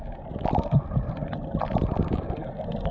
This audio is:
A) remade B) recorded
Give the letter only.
B